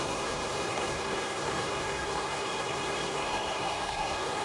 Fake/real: fake